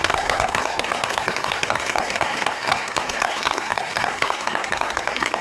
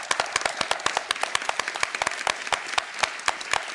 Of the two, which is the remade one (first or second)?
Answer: first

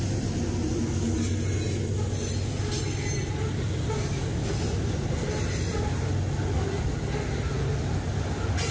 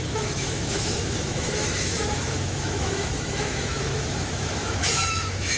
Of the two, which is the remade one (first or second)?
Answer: second